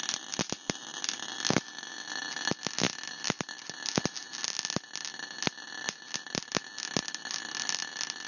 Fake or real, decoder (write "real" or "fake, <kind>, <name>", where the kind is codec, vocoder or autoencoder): real